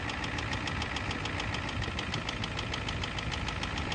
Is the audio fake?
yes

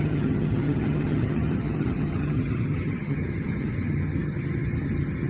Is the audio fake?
yes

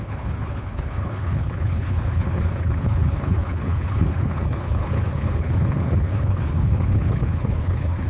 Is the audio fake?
yes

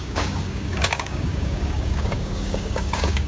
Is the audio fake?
yes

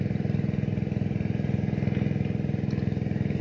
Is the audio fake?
no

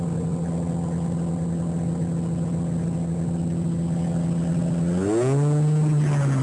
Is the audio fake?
no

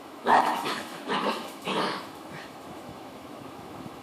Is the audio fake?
yes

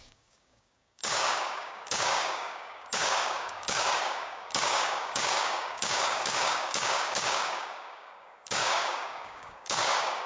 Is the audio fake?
yes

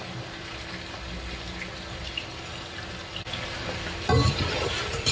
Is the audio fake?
no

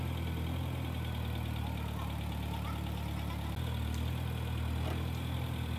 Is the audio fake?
no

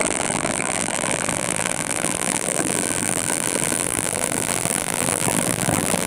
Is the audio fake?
yes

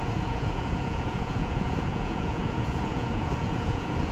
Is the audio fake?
yes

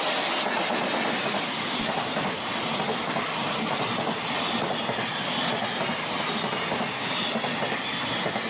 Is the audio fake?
no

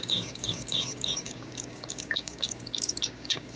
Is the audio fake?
yes